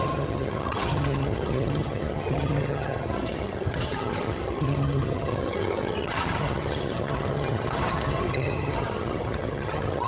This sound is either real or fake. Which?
fake